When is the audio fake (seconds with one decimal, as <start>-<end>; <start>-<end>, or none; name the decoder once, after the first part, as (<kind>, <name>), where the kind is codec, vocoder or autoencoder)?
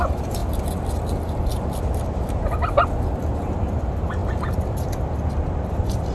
4.2-5.0 (vocoder, BigVGAN v2)